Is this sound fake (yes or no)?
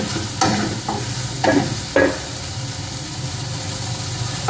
no